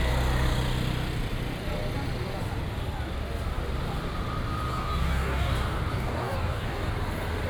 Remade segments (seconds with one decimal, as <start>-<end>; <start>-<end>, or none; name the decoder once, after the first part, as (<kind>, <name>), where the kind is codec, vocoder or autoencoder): 4.7-5.5 (codec, DAC); 5.9-6.9